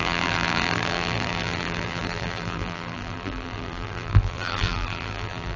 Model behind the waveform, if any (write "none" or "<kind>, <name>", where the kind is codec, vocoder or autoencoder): vocoder, BigVGAN v2